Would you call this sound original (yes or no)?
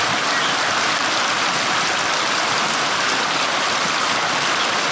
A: yes